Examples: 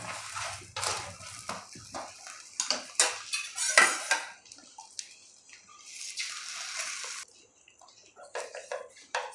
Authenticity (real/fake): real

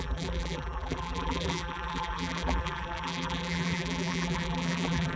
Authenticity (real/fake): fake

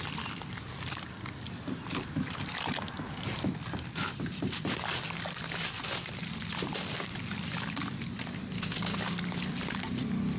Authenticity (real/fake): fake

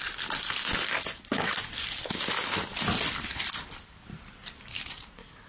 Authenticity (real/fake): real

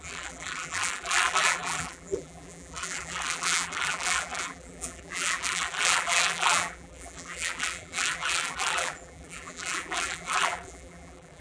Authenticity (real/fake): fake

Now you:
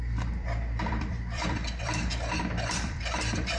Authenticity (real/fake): fake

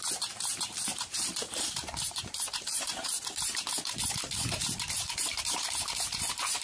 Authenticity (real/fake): fake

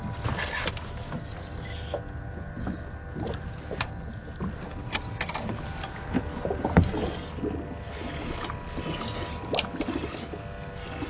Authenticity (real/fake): real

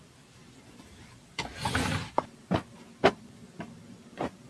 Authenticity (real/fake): fake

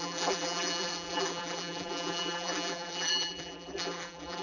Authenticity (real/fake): fake